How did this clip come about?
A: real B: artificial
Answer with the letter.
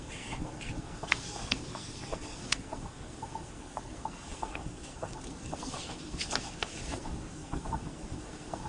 B